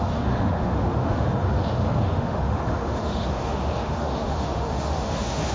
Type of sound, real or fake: fake